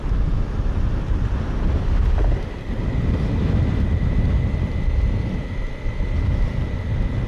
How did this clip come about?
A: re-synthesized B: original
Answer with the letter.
B